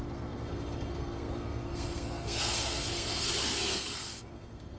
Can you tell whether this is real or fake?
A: fake